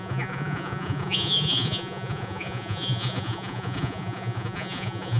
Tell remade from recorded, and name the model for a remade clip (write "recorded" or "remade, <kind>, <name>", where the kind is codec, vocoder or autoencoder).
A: remade, vocoder, Vocos